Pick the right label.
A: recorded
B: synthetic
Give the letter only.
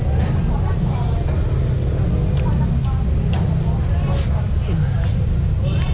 A